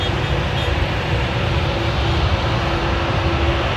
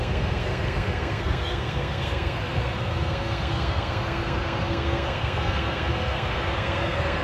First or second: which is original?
first